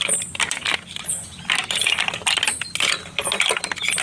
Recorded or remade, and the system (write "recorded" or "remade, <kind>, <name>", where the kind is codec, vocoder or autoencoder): recorded